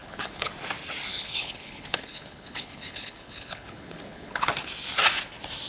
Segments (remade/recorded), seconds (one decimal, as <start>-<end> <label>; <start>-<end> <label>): 0.0-0.5 remade; 0.5-1.1 recorded; 1.1-4.5 remade; 4.5-5.7 recorded